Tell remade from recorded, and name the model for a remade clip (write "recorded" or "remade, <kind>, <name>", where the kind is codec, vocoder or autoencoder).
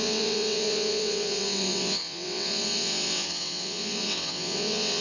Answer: remade, vocoder, WaveNeXt